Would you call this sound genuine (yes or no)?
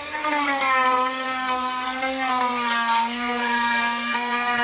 no